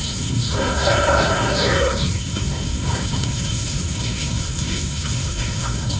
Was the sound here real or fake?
fake